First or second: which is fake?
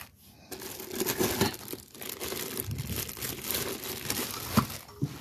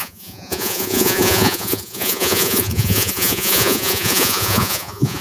second